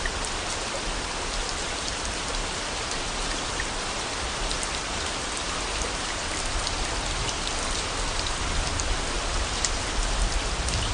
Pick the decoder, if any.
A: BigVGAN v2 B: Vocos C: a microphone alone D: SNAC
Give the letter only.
C